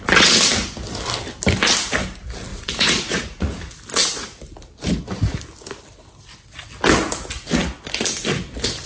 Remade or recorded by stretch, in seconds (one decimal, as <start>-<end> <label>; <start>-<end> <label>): 0.0-2.5 recorded; 2.5-3.6 remade; 3.6-8.9 recorded